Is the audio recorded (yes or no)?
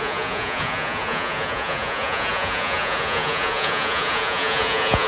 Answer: no